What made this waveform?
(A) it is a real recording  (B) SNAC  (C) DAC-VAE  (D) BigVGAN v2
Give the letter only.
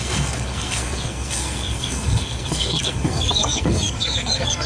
B